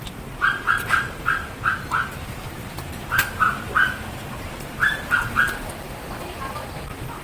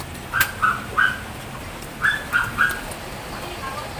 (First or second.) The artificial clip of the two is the first